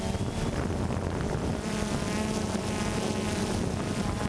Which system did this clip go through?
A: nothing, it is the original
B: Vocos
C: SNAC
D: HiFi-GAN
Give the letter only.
A